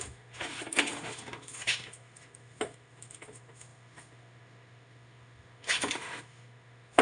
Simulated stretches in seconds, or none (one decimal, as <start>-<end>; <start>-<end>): 0.0-7.0